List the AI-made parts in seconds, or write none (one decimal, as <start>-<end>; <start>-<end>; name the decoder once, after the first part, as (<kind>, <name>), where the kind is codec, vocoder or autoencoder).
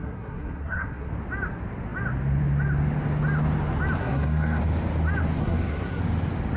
0.0-1.1 (codec, SNAC); 4.0-4.6; 5.4-6.0